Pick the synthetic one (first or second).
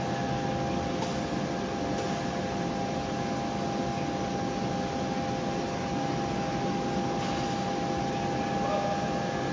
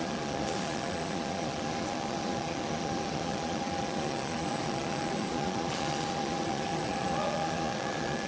second